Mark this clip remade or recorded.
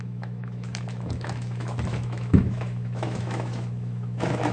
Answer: remade